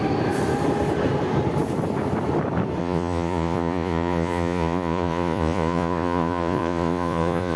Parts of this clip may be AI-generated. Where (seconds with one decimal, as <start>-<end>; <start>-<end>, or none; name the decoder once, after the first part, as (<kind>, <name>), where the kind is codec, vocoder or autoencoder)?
2.8-7.6 (vocoder, Vocos)